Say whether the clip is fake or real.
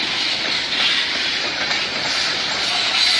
real